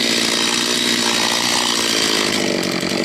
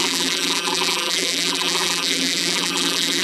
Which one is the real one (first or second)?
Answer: first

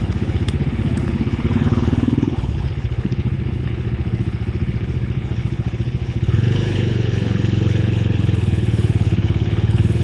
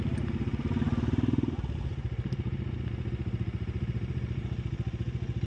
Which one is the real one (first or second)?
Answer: second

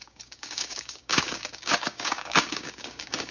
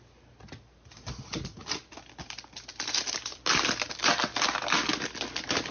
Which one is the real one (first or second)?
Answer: second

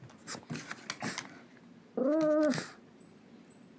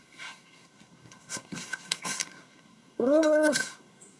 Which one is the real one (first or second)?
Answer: first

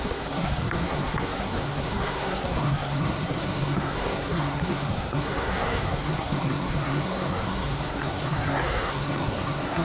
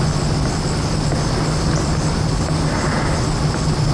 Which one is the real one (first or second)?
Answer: second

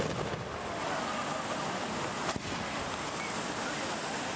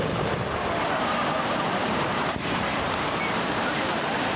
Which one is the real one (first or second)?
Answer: first